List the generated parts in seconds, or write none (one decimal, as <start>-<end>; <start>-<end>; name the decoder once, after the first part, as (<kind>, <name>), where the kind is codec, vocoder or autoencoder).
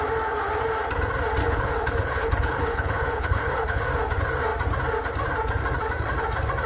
1.4-3.8 (codec, HILCodec)